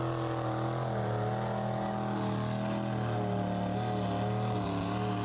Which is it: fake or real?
real